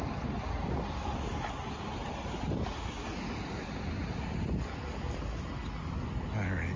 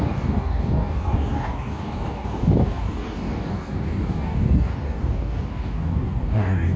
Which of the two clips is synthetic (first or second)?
second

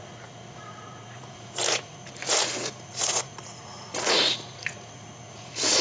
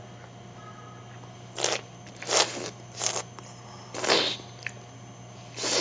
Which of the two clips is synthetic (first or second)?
first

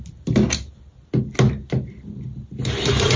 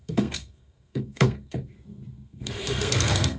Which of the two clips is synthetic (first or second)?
second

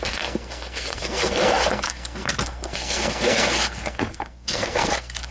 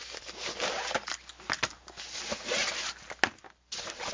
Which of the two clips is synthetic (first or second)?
first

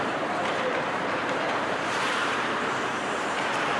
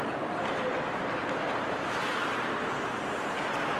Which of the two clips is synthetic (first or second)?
first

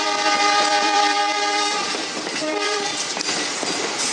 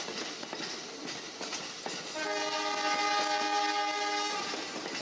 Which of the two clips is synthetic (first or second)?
first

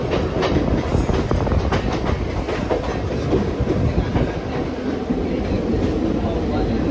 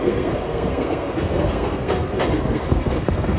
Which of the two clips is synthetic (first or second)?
second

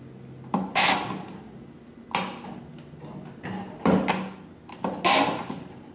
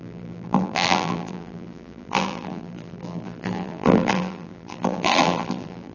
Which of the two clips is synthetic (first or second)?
second